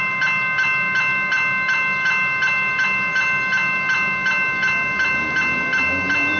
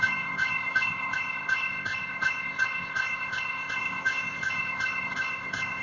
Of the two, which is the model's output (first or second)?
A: second